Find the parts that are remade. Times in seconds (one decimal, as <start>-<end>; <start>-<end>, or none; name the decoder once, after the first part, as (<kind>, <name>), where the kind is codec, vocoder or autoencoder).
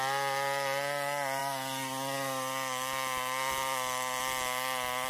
none